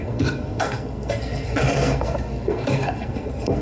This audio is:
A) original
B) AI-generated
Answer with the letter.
B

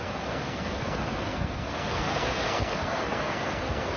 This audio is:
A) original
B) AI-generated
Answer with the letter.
B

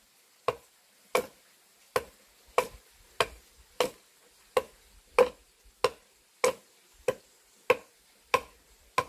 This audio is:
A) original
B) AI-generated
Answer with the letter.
A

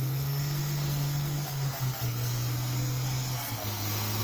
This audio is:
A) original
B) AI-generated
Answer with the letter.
B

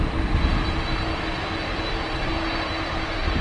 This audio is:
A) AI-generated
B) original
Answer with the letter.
B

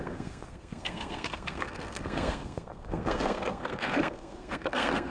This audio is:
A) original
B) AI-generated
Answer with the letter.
B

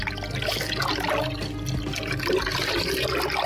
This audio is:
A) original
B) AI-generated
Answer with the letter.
A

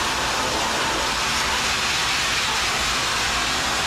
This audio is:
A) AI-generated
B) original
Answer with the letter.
B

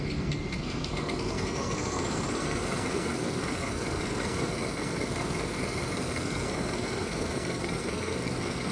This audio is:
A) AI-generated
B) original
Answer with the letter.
A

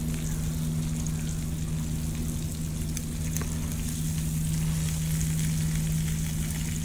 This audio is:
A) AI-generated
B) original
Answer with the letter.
B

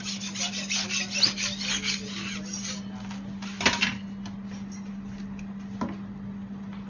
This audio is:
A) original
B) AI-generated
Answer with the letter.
A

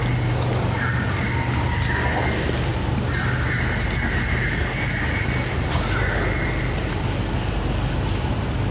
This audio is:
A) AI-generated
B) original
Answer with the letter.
B